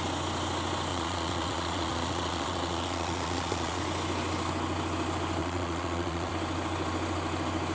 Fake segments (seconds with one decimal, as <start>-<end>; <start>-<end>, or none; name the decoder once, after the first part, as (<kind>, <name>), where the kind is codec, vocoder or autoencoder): 0.9-3.8 (vocoder, Vocos); 5.4-6.3